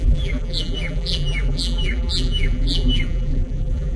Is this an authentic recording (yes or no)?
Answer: no